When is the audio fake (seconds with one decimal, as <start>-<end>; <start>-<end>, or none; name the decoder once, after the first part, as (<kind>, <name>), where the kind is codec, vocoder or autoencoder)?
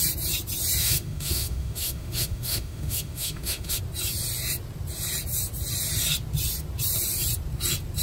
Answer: 0.8-3.8 (autoencoder, DAC-VAE)